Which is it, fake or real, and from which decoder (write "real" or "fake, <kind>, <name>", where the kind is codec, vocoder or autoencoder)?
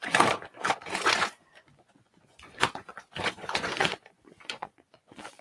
fake, vocoder, Vocos